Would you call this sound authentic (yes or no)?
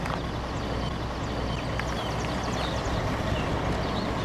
yes